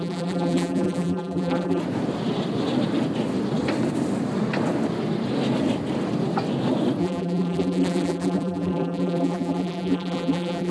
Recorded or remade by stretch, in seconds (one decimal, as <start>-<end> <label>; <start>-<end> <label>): 0.0-1.8 remade; 1.8-7.0 recorded; 7.0-10.7 remade